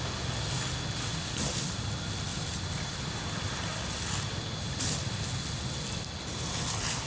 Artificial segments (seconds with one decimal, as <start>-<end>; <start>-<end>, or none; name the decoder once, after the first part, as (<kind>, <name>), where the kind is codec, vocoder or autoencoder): 2.3-3.2 (vocoder, BigVGAN v2)